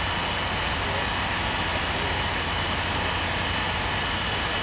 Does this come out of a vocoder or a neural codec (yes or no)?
no